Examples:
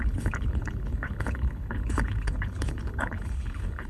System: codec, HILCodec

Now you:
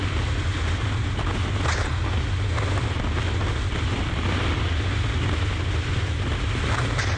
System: none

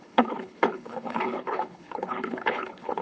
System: codec, HILCodec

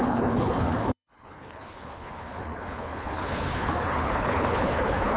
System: codec, HILCodec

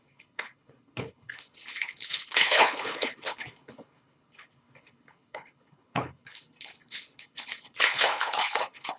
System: codec, HILCodec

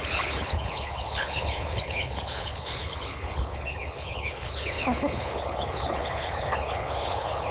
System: codec, HILCodec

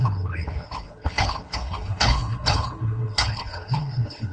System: codec, HILCodec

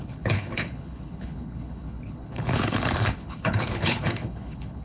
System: codec, HILCodec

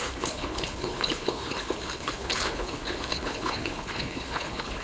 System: codec, HILCodec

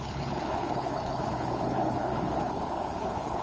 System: codec, HILCodec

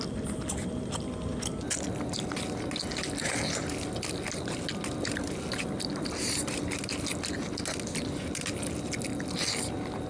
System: none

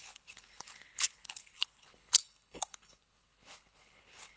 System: codec, HILCodec